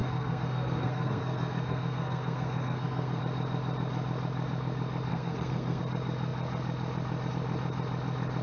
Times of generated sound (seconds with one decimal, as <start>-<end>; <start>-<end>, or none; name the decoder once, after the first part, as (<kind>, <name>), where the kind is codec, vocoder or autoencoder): 0.0-3.2 (codec, SNAC); 5.1-5.8